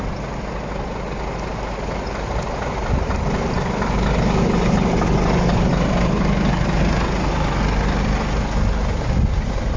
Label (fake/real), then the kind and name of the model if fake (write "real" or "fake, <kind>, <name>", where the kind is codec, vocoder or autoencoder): real